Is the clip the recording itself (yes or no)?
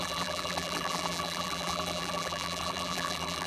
no